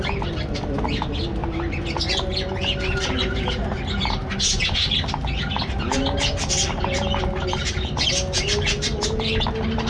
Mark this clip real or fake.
real